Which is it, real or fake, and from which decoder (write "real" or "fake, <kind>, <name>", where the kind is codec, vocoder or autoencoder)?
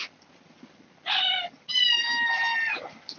real